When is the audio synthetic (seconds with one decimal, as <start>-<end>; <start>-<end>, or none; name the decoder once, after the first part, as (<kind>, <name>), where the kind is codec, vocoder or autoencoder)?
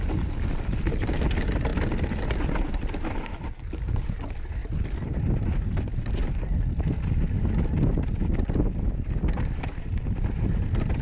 none